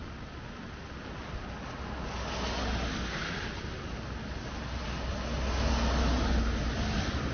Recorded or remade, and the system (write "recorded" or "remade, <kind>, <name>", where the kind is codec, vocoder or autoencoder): recorded